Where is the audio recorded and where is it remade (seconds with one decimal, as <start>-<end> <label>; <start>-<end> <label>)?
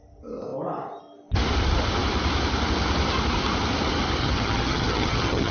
0.0-4.2 recorded; 4.2-5.5 remade